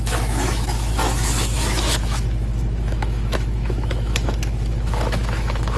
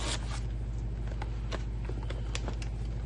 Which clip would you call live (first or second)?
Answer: second